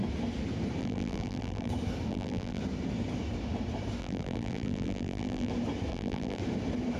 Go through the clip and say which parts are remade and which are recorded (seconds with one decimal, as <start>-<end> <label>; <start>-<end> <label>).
0.0-0.8 recorded; 0.8-1.7 remade; 1.7-2.1 recorded; 2.1-2.6 remade; 2.6-4.0 recorded; 4.0-5.5 remade; 5.5-5.9 recorded; 5.9-6.4 remade; 6.4-7.0 recorded